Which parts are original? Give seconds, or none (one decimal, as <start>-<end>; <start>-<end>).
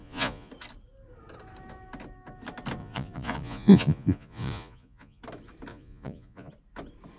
0.5-2.8; 5.2-5.7; 6.5-7.2